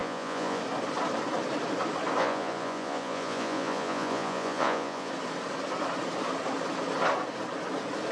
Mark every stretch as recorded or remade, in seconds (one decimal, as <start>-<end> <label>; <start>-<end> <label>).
0.0-0.6 remade; 0.6-2.2 recorded; 2.2-5.1 remade; 5.1-8.1 recorded